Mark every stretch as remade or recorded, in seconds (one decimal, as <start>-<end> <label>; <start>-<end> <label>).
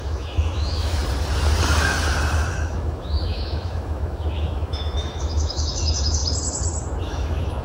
0.0-1.0 remade; 1.0-2.5 recorded; 2.5-6.2 remade; 6.2-7.0 recorded; 7.0-7.6 remade